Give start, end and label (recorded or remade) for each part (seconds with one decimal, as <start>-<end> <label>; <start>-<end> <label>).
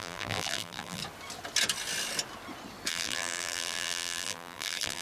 0.0-1.0 remade; 1.0-2.9 recorded; 2.9-5.0 remade